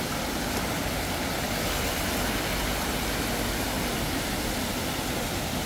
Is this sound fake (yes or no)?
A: no